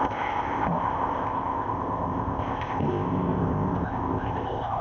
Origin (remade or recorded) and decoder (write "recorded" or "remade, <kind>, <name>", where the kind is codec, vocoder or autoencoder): remade, codec, ZipCodec